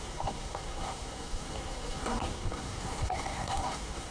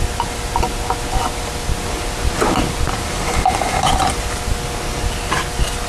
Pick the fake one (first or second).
first